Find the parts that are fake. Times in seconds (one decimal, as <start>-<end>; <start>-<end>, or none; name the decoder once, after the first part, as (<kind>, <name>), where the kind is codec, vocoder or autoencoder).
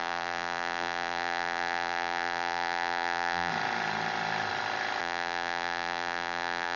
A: 0.0-3.5 (vocoder, BigVGAN v2); 5.0-6.8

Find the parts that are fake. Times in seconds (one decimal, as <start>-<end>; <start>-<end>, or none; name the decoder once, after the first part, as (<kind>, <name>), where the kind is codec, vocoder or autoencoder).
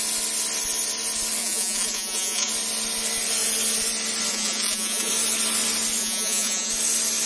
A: 1.4-2.5 (vocoder, Vocos); 4.3-5.1; 6.0-6.7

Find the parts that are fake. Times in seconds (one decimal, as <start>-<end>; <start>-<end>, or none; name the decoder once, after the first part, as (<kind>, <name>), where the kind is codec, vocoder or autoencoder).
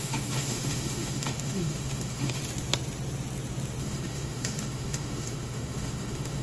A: 0.0-2.4 (autoencoder, DAC-VAE); 3.8-6.4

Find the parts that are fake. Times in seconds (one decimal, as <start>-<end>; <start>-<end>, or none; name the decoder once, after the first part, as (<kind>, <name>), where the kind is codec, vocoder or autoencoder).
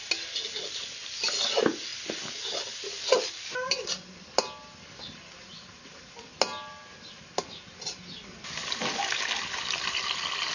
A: none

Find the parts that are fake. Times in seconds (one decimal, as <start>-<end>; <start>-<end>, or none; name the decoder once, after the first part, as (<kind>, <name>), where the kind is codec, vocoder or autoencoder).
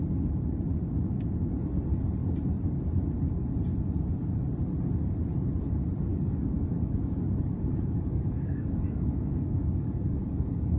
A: 6.1-10.8 (codec, DAC)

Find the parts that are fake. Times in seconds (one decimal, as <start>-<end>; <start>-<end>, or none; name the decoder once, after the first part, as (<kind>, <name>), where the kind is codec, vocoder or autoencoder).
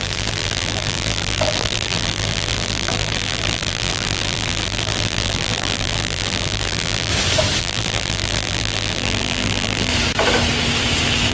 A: 0.0-7.1 (vocoder, BigVGAN v2); 7.6-9.9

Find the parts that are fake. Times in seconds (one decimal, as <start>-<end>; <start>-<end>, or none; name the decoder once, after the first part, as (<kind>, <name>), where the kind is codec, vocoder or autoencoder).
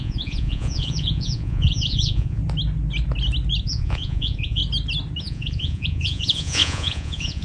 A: 0.0-2.4 (vocoder, Vocos); 3.6-4.6; 5.2-7.4